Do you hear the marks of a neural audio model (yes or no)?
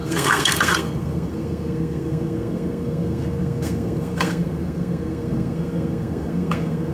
yes